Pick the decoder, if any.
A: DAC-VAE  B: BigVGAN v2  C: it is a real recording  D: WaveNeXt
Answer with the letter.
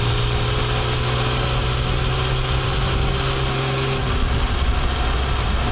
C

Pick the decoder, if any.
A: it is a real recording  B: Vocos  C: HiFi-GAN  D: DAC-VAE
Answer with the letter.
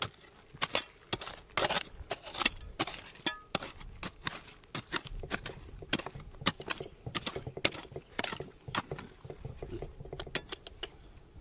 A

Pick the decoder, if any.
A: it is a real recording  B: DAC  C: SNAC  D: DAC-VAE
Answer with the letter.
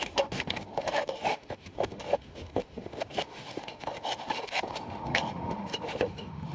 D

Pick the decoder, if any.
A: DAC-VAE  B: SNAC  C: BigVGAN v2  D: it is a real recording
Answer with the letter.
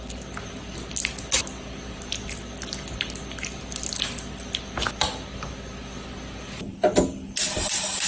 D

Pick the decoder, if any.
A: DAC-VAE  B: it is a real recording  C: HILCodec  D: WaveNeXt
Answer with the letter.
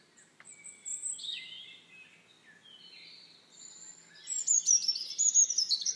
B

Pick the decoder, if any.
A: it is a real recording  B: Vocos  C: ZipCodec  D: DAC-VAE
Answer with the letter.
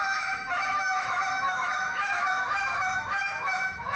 D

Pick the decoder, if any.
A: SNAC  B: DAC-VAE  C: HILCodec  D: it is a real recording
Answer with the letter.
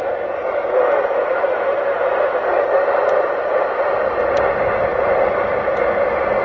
D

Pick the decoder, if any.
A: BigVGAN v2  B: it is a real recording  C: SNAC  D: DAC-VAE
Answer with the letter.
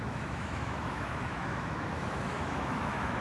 D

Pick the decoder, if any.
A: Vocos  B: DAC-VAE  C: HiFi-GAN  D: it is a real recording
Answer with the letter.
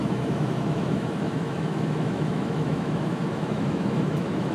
B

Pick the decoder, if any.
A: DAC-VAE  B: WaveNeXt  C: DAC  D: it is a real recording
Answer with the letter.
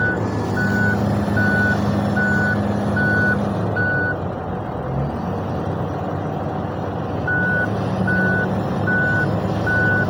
D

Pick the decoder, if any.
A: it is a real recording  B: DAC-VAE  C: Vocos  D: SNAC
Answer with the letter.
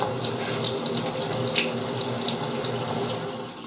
A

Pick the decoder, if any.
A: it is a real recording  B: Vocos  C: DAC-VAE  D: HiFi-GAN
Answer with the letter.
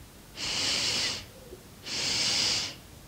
A